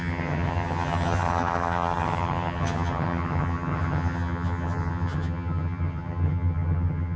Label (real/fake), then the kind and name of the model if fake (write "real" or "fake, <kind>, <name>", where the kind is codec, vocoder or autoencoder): fake, vocoder, HiFi-GAN